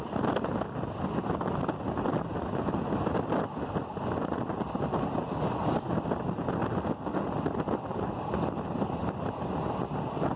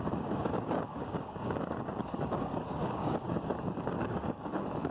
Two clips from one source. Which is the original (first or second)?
first